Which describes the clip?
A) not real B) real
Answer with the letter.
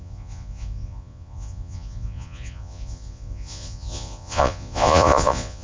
A